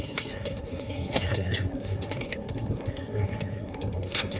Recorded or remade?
remade